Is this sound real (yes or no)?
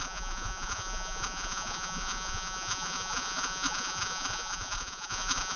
no